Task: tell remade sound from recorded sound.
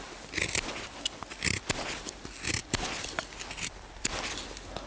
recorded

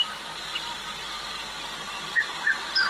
remade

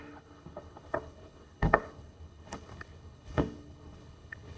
remade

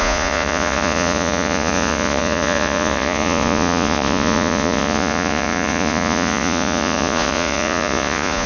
remade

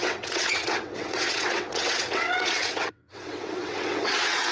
remade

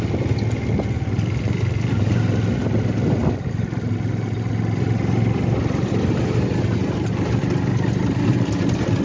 recorded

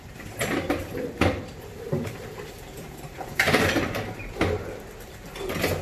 remade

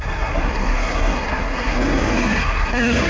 remade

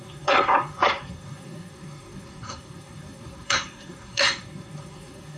remade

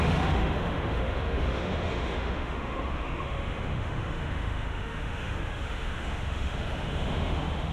remade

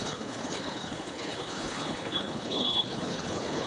remade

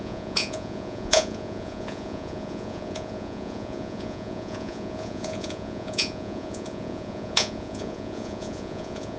remade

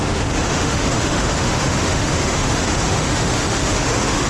remade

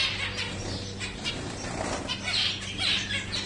recorded